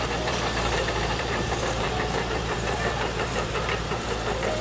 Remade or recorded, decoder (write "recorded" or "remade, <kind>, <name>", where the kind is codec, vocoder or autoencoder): remade, vocoder, BigVGAN v2